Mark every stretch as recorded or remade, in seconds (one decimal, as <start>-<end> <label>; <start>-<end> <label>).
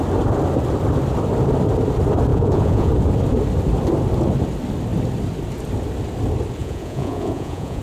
0.0-2.3 recorded; 2.3-2.9 remade; 2.9-6.6 recorded; 6.6-7.8 remade